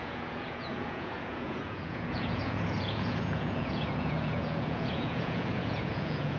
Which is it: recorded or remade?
remade